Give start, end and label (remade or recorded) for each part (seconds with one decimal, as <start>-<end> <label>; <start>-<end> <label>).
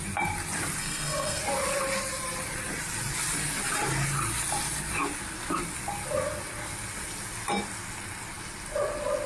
0.0-0.8 recorded; 0.8-1.4 remade; 1.4-9.3 recorded